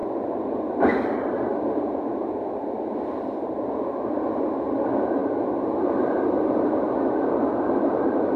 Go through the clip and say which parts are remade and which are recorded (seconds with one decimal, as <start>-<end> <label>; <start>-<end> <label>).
0.0-5.2 remade; 5.2-7.6 recorded; 7.6-8.4 remade